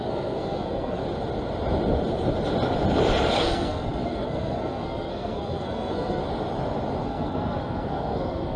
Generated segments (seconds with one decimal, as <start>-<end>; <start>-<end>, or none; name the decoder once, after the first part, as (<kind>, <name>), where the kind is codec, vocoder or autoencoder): 0.0-1.0 (codec, SNAC); 3.3-6.2; 7.0-8.6